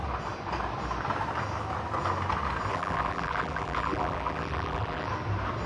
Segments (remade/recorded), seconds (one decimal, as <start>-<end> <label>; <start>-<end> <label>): 0.0-2.7 recorded; 2.7-5.1 remade; 5.1-5.7 recorded